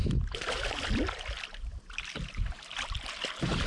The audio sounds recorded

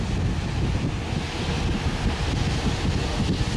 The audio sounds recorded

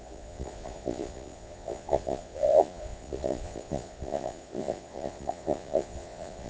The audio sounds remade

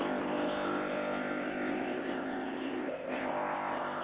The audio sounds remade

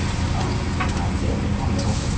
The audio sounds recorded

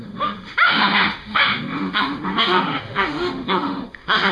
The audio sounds remade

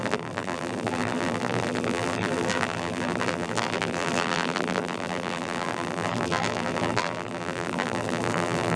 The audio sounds remade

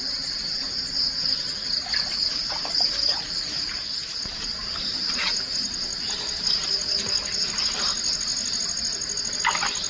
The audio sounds recorded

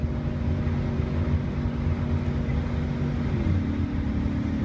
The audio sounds recorded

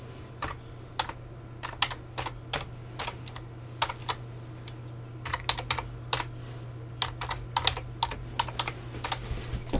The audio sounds recorded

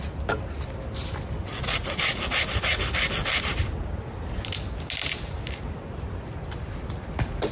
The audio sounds recorded